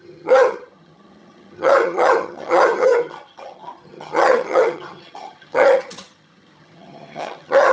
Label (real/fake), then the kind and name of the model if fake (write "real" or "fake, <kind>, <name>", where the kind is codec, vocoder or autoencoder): fake, vocoder, HiFi-GAN